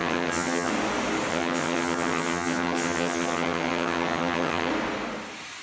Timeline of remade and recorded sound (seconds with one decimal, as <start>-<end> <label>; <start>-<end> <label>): 0.0-0.7 remade; 0.7-1.3 recorded; 1.3-4.7 remade; 4.7-5.6 recorded